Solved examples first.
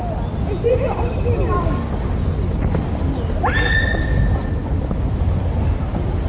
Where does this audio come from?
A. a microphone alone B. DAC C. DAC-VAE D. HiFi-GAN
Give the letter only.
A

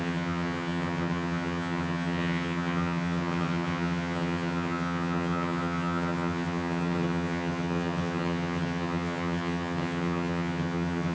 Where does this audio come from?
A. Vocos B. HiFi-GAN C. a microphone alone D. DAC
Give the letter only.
B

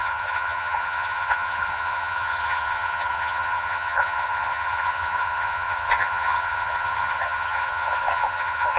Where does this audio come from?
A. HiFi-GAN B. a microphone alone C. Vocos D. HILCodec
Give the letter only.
A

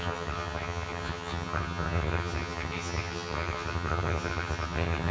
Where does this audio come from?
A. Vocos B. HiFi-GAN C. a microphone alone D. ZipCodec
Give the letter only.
B